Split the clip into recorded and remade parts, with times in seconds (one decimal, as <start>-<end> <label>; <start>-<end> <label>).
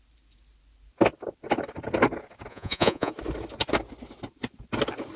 0.0-2.5 recorded; 2.5-3.1 remade; 3.1-5.2 recorded